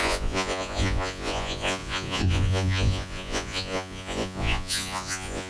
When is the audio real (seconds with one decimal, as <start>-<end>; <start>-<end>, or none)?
none